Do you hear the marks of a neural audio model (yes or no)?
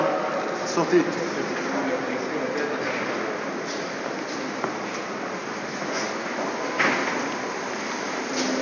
no